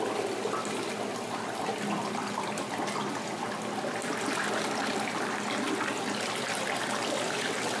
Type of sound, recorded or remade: recorded